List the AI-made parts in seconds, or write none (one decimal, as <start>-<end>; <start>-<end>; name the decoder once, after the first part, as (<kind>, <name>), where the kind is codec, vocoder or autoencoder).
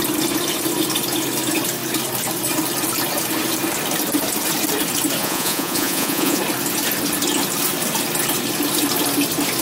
5.2-6.4 (vocoder, Vocos)